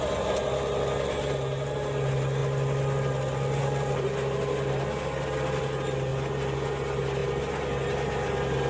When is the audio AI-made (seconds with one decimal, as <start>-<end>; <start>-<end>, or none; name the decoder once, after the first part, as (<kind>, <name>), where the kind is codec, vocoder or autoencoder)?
none